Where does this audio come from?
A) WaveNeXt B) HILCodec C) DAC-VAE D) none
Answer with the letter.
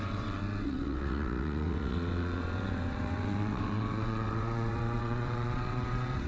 A